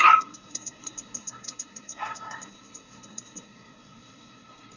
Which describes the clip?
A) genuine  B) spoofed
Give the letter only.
B